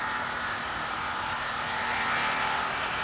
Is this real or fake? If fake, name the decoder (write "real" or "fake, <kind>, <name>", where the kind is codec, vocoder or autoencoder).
real